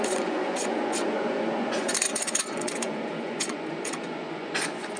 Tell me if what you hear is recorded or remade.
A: remade